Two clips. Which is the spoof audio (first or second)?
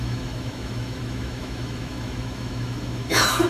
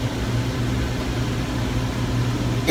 first